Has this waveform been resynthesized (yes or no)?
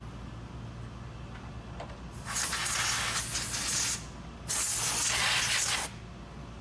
no